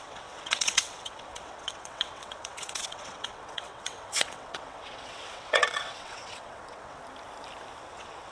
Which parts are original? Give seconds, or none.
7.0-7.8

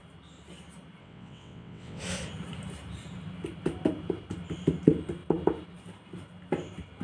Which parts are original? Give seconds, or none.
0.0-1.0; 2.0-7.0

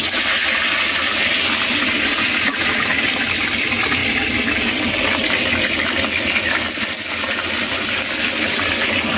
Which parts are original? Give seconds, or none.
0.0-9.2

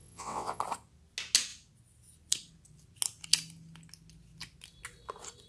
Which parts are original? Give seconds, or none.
0.6-5.5